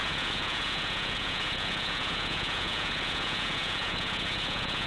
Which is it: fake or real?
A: fake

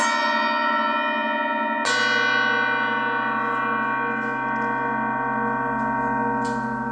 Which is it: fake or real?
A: real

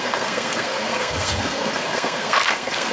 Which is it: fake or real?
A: fake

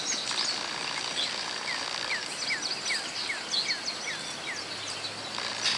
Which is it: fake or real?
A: real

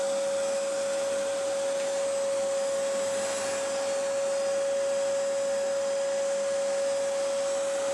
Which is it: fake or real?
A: real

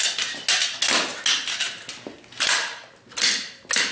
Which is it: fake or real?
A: real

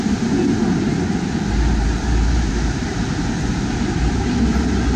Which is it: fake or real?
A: fake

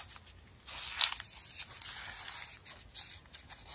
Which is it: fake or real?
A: real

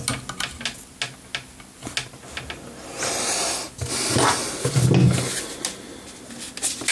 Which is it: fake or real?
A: real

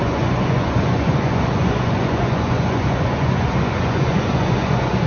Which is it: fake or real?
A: fake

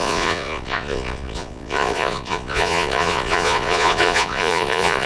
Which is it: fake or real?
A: fake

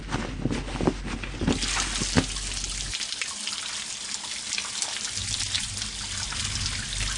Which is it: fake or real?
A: real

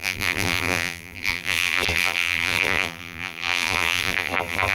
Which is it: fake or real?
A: fake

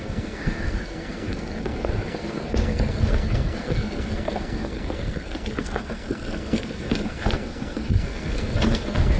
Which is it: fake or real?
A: fake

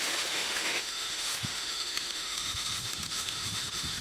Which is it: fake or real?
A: fake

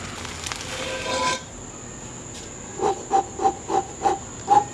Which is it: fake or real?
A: real